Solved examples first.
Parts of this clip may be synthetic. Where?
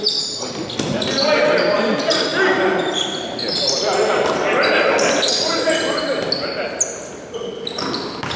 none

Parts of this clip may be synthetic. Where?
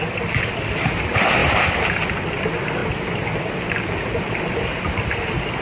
none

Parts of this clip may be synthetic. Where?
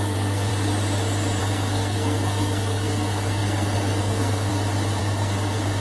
0.0-0.5 (codec, SNAC); 1.4-4.5; 5.0-5.8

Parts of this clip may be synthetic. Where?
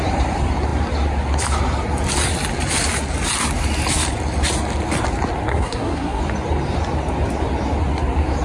5.5-6.2 (codec, SNAC)